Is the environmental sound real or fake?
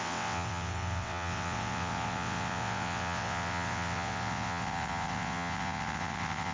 fake